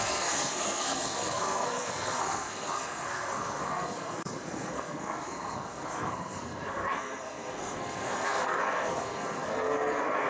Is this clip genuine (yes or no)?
no